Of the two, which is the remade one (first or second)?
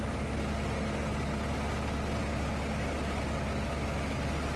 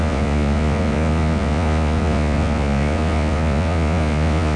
second